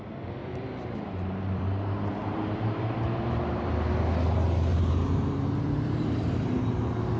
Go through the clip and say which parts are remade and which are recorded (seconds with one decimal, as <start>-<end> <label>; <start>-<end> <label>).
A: 0.0-0.4 recorded; 0.4-3.9 remade; 3.9-4.7 recorded; 4.7-6.5 remade; 6.5-7.2 recorded